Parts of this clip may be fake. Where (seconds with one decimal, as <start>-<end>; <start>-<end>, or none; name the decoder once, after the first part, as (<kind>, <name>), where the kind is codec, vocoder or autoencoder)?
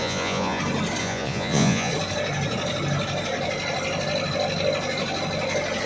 0.0-0.6 (vocoder, Vocos); 1.0-1.9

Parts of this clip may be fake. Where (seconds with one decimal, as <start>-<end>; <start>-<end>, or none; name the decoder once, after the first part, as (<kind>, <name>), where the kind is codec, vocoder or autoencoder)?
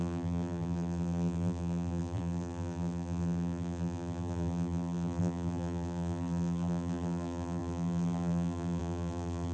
0.0-9.5 (vocoder, BigVGAN v2)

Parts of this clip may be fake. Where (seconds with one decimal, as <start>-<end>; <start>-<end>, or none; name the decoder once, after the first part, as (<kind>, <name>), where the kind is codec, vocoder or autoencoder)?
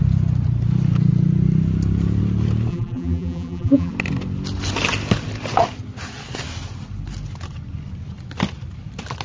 2.7-3.9 (vocoder, BigVGAN v2)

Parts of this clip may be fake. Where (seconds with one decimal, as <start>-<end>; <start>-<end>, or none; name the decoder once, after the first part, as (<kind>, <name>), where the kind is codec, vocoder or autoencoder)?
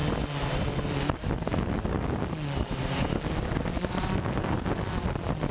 none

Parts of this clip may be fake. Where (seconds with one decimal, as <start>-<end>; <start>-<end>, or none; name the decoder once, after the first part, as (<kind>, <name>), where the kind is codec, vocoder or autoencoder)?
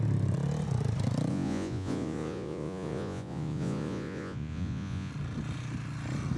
1.3-5.1 (vocoder, Vocos)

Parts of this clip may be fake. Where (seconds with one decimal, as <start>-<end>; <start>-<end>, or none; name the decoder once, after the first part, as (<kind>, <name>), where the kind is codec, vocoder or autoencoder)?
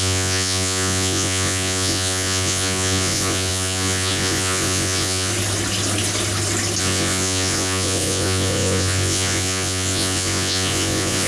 0.0-5.3 (vocoder, Vocos); 6.8-11.3